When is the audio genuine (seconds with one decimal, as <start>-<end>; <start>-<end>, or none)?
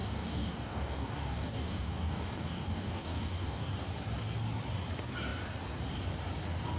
3.7-6.8